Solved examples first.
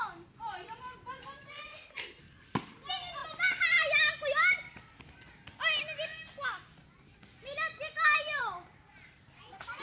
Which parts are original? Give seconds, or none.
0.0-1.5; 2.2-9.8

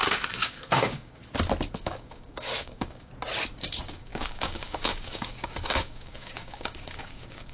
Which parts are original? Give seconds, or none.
1.2-1.7; 3.1-3.6